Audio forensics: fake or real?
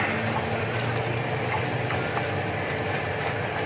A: real